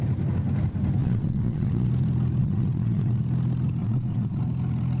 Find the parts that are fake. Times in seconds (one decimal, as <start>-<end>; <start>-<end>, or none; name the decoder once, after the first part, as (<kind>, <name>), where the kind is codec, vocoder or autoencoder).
1.0-1.9 (vocoder, Vocos); 2.4-3.2; 3.8-4.4